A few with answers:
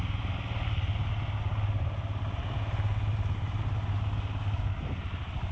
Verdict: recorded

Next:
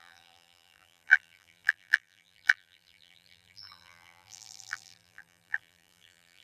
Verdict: remade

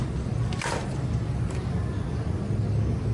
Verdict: recorded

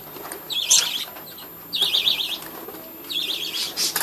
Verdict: recorded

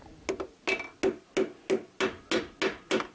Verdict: recorded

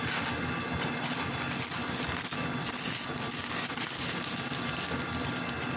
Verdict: recorded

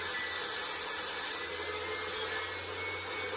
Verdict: recorded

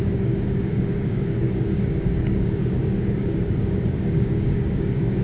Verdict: remade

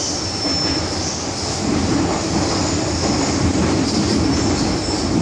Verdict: recorded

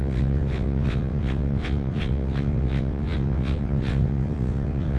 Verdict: remade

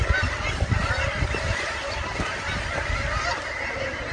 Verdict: remade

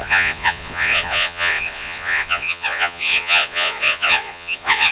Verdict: remade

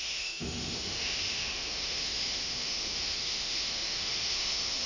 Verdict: remade